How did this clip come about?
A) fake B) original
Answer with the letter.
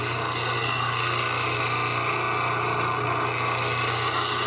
B